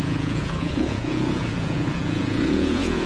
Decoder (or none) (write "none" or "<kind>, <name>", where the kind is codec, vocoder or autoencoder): vocoder, Vocos